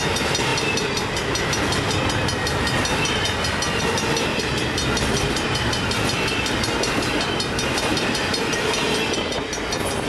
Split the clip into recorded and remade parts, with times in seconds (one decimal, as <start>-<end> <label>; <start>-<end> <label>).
0.0-4.3 recorded; 4.3-6.5 remade; 6.5-7.9 recorded; 7.9-9.4 remade; 9.4-10.1 recorded